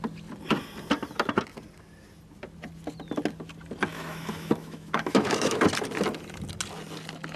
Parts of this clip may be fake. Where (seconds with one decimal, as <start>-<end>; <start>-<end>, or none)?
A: 3.9-5.6

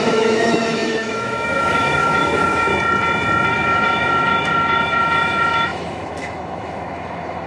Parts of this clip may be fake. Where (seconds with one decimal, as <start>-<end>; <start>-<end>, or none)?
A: 0.0-2.7; 3.5-7.5

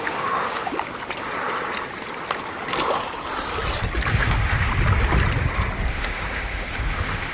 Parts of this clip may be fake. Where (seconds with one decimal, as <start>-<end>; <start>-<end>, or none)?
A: 0.0-0.7; 4.1-4.7; 5.9-7.3

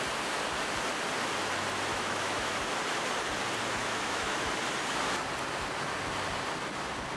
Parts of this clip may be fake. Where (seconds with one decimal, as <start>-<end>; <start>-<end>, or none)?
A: 1.9-2.6; 3.8-4.5

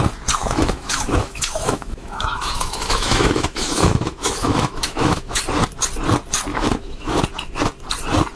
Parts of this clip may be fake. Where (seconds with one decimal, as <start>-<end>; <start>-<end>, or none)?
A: 0.4-5.4; 6.5-7.2